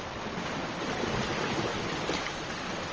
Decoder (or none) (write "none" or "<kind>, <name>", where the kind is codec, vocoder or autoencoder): none